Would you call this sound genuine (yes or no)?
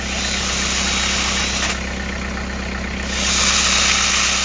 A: yes